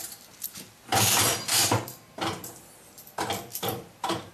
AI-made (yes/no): yes